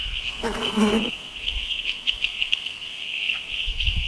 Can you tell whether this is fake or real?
fake